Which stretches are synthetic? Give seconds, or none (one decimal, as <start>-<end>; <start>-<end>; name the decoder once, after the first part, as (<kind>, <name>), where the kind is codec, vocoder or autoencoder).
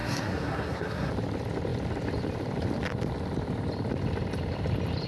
0.0-1.1 (codec, SNAC)